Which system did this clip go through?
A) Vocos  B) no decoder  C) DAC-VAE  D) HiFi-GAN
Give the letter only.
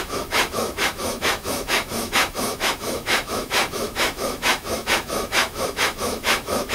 C